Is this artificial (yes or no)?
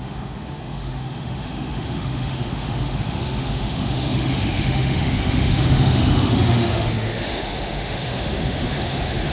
yes